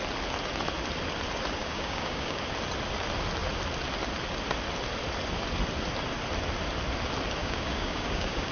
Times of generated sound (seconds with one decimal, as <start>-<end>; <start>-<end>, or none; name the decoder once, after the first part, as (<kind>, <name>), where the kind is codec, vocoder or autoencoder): 1.6-2.4 (codec, DAC); 7.4-8.5